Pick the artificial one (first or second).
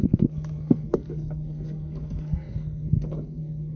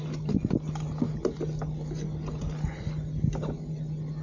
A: first